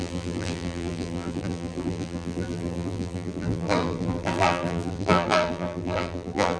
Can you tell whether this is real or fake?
fake